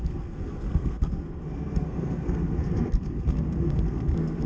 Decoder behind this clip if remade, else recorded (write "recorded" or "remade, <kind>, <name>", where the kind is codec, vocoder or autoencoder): remade, codec, SNAC